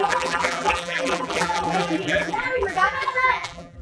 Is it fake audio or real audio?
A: fake